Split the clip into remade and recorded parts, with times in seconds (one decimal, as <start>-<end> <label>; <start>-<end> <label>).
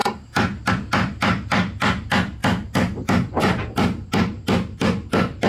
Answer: 0.0-5.5 recorded